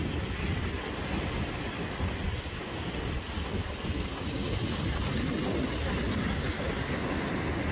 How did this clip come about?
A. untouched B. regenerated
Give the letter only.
A